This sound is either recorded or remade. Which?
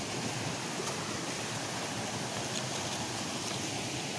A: recorded